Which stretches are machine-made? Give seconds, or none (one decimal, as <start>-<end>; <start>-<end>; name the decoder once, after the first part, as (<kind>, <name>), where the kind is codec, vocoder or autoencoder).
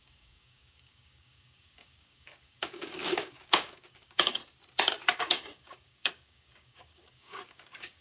0.0-4.4 (codec, DAC); 5.2-8.0